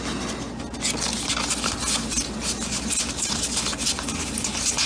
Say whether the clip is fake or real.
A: real